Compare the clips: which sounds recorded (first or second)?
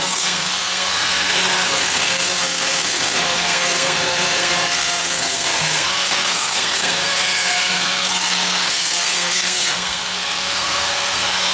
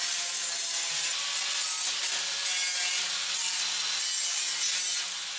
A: second